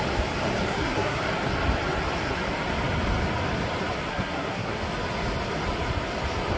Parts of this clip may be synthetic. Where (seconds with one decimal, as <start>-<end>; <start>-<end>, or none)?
0.7-1.2; 4.1-4.8